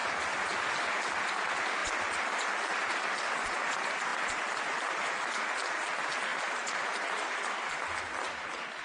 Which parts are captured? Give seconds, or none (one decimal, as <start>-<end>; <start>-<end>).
0.0-8.8